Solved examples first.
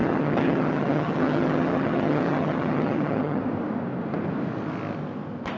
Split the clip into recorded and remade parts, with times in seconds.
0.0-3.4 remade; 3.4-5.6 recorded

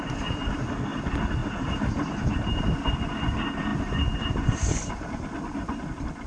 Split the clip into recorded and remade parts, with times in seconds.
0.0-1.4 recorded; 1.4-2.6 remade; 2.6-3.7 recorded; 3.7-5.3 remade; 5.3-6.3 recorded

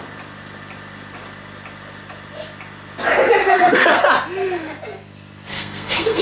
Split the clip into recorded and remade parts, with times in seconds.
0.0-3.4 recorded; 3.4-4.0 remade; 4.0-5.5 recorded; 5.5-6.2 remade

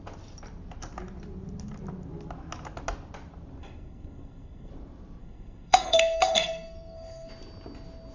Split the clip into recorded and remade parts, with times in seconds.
0.0-3.6 recorded; 3.6-4.7 remade; 4.7-5.2 recorded; 5.2-7.3 remade; 7.3-8.1 recorded